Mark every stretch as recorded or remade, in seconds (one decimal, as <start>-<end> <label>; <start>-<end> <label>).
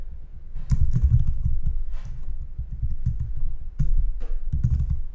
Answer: 0.0-5.1 recorded